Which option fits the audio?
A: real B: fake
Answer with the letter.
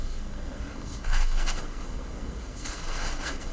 B